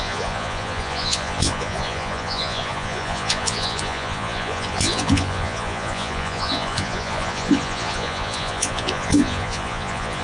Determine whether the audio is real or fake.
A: fake